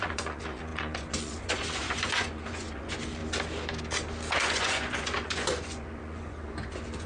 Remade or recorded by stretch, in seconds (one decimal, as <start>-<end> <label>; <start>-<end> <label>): 0.0-3.2 remade; 3.2-4.4 recorded; 4.4-7.1 remade